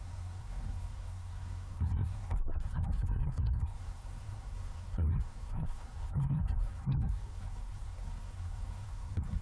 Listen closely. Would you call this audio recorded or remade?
remade